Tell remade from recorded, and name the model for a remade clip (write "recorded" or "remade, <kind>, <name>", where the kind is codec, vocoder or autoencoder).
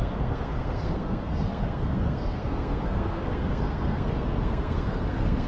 remade, codec, SNAC